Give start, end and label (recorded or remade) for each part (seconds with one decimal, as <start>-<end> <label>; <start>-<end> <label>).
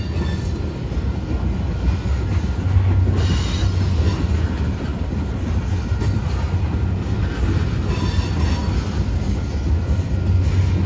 0.0-10.9 recorded